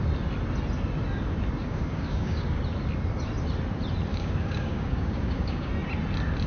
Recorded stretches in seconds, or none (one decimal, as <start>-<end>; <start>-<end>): 0.0-1.6; 2.6-4.1; 5.7-6.5